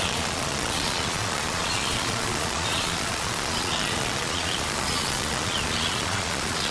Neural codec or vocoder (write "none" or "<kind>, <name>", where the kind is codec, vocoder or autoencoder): vocoder, Vocos